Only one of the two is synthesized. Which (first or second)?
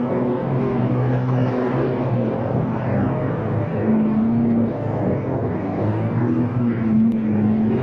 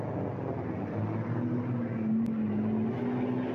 first